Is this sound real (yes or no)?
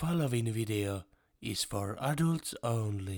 yes